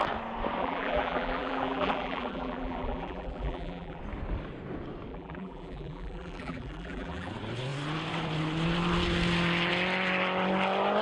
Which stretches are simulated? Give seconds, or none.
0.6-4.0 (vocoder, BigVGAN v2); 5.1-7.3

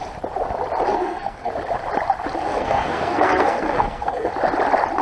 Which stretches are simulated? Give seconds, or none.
0.9-1.5 (codec, SNAC); 2.5-4.3

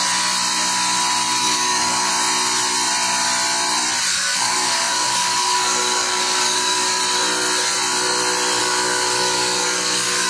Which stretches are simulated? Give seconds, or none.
1.4-2.1 (codec, DAC); 4.1-7.0; 8.6-10.3

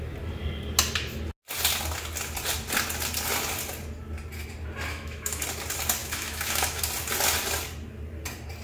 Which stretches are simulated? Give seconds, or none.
4.9-5.4 (autoencoder, DAC-VAE); 6.0-6.8

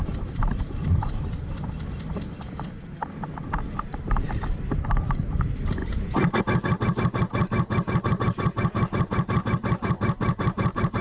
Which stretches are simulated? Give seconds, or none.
none

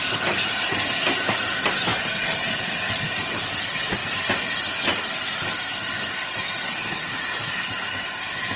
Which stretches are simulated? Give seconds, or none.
none